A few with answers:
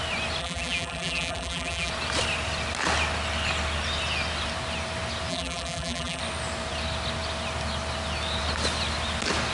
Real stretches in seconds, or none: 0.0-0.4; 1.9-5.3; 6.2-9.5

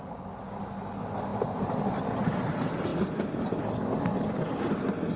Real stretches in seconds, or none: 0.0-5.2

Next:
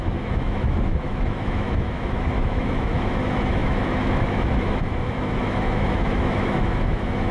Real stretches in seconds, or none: none